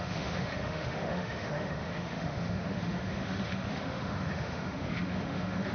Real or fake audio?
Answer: fake